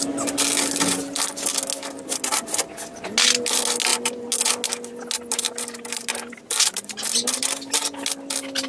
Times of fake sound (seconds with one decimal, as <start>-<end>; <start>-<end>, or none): none